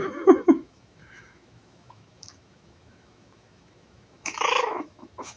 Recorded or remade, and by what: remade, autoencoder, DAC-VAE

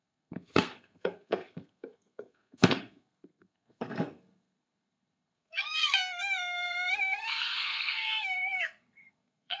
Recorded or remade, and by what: remade, codec, SNAC